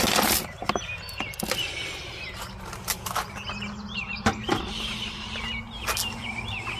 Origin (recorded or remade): recorded